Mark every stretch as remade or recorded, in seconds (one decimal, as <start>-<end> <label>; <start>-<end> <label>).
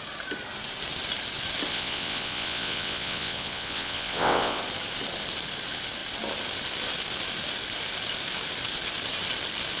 0.0-1.7 recorded; 1.7-4.6 remade; 4.6-9.8 recorded